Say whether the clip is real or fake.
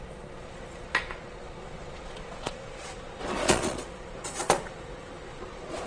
fake